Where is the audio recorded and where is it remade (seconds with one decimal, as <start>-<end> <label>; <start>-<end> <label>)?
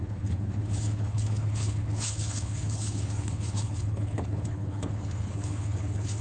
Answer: 0.0-6.2 remade